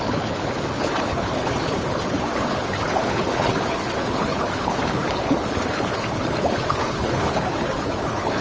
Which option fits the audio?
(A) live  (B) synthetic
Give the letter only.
B